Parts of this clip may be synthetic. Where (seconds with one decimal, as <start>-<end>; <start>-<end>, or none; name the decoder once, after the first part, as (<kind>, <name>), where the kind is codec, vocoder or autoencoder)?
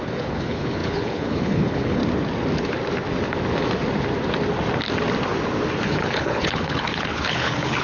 0.0-2.0 (codec, HILCodec); 5.8-7.8